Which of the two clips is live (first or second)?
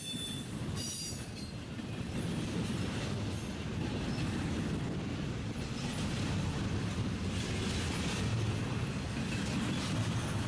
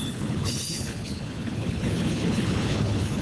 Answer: first